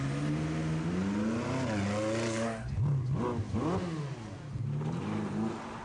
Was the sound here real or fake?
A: real